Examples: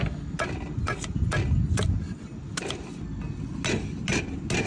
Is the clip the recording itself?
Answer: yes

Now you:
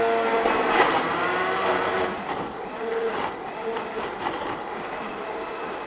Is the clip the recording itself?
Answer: yes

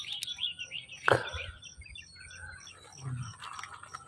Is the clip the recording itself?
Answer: yes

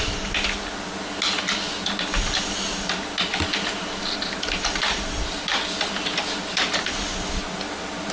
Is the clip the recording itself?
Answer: yes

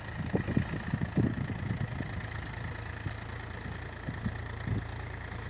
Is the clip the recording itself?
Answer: yes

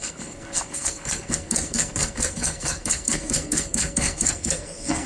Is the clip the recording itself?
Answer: no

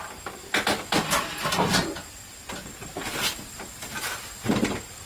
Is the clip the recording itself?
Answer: yes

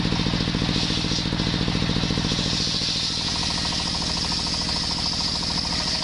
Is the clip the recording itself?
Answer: yes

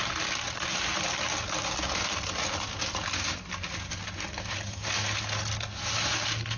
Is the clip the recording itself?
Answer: yes